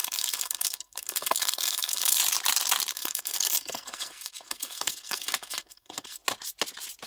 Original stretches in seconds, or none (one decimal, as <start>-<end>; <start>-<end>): 2.2-2.9; 6.2-7.1